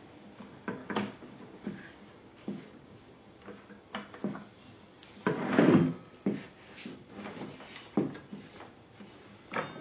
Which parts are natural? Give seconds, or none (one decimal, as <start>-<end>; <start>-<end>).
0.0-0.8; 1.8-2.3; 3.2-9.8